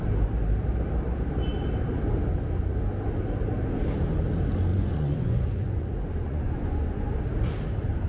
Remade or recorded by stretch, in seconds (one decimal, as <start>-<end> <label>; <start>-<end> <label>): 0.0-4.7 recorded; 4.7-7.1 remade; 7.1-8.1 recorded